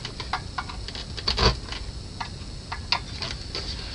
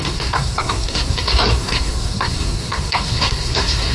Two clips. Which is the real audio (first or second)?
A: first